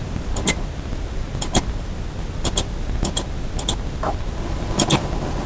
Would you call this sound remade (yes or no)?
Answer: no